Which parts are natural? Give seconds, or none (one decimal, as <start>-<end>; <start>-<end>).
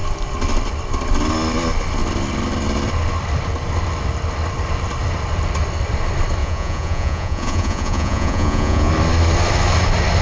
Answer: 0.0-6.4; 8.9-10.2